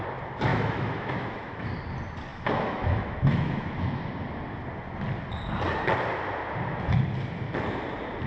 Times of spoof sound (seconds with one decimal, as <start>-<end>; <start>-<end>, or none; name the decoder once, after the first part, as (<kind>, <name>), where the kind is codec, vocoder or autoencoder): 0.5-1.7 (autoencoder, DAC-VAE); 2.3-4.1